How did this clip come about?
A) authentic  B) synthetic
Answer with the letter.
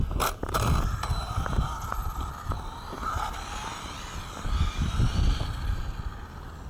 A